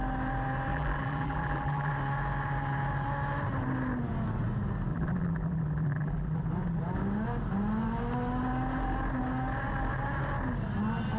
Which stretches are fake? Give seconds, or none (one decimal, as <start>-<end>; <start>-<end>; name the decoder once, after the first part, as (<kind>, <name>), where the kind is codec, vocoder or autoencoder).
0.7-1.9 (vocoder, BigVGAN v2); 4.9-6.4